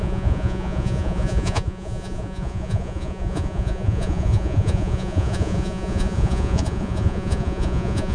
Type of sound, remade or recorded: remade